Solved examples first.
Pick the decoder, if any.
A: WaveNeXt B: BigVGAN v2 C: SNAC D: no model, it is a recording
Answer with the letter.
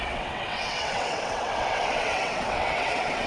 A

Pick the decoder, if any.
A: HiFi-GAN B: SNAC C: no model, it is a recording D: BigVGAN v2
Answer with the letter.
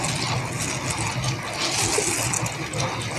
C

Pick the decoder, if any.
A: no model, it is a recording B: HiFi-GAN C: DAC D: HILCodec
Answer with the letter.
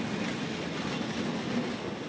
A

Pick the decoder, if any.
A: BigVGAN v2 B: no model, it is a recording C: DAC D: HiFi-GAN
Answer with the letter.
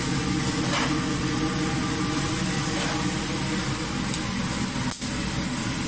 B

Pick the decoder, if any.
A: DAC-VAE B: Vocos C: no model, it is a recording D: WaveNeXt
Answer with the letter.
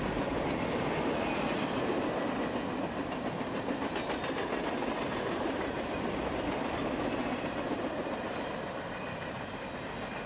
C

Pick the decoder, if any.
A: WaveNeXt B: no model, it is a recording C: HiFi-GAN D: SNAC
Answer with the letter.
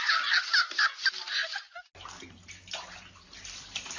B